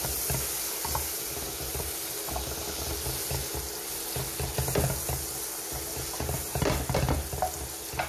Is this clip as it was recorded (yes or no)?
yes